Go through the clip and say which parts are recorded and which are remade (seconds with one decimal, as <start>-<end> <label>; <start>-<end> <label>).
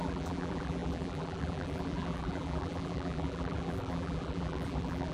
0.0-5.1 remade